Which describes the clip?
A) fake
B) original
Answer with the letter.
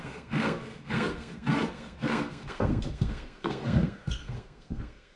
A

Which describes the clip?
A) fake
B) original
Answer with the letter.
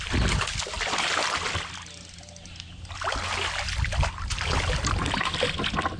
B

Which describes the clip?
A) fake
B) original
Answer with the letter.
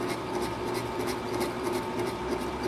B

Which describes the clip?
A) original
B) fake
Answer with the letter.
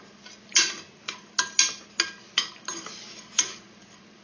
A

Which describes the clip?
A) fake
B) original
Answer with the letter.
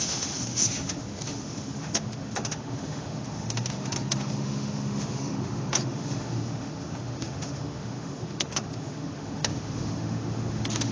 A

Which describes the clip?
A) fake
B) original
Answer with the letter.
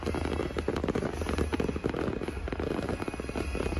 B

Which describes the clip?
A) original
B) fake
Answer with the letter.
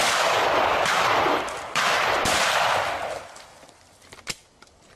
B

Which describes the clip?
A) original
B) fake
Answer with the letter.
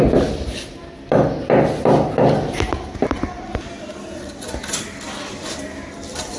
A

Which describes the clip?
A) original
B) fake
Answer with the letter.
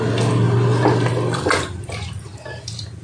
A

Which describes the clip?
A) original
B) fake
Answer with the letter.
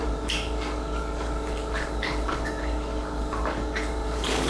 B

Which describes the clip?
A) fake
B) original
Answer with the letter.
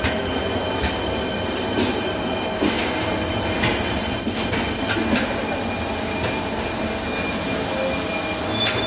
B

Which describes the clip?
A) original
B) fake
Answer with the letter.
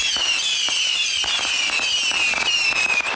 B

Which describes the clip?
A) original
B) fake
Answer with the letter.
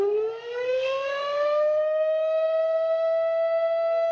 B